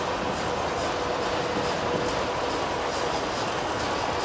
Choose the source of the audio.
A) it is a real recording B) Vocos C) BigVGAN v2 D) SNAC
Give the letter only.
A